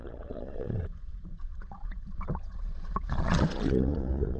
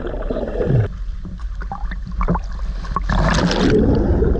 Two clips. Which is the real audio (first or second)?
second